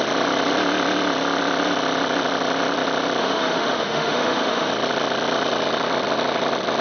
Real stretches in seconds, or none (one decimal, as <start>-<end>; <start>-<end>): 0.0-3.2; 4.7-6.8